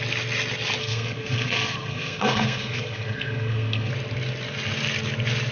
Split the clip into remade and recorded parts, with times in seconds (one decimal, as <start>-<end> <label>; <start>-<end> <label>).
0.0-0.8 recorded; 0.8-3.9 remade; 3.9-5.5 recorded